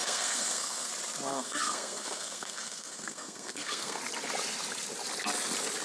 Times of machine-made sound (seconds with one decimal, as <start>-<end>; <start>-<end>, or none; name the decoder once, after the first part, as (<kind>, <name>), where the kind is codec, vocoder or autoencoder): 0.0-0.9 (codec, SNAC); 1.3-4.0